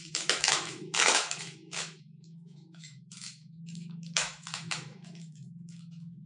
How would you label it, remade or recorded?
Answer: remade